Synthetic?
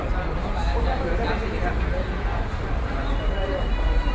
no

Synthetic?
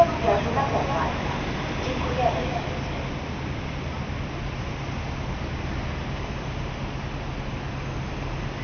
no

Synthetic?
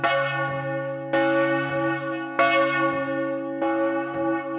no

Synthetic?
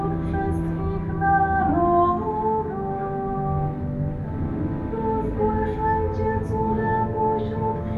no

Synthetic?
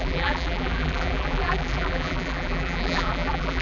yes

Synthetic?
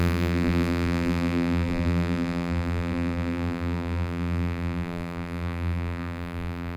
yes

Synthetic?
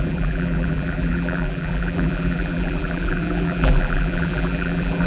yes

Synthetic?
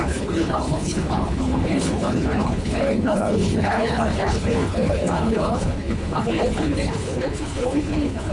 yes